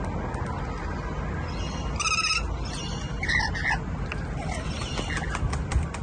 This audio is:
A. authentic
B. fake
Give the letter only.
A